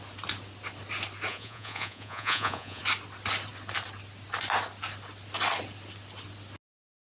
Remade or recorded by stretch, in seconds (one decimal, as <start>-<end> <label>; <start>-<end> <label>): 0.0-1.3 recorded; 1.3-2.8 remade; 2.8-7.1 recorded